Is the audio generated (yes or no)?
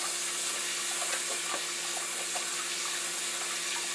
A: no